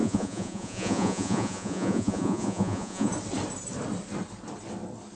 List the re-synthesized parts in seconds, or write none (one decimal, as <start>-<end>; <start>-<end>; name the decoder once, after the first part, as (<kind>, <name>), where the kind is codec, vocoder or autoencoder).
0.0-3.1 (vocoder, Vocos)